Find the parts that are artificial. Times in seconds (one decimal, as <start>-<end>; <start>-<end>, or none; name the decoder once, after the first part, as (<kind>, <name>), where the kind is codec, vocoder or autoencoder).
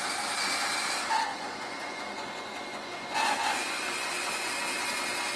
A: 1.3-4.5 (vocoder, Vocos)